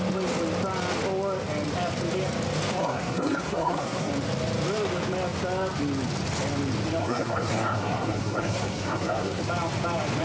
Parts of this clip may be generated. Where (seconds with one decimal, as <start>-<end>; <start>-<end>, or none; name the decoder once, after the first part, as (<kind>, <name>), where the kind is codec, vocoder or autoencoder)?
2.8-4.1 (codec, SNAC); 7.0-9.4